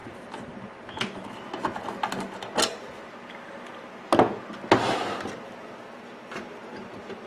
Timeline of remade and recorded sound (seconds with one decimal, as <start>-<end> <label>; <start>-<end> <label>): 0.0-7.3 recorded